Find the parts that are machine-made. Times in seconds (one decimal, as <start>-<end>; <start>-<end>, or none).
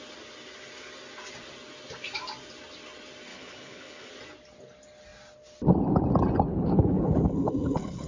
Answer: 3.3-4.1; 6.5-8.1